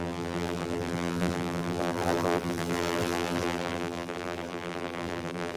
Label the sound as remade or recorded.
remade